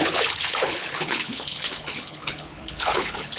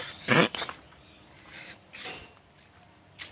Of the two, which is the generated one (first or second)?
first